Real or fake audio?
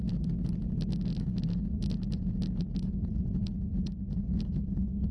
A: real